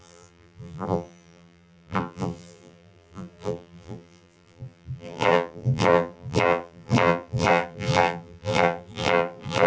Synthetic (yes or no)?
yes